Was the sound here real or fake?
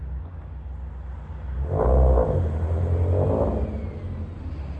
real